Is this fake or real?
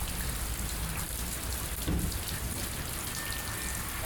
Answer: real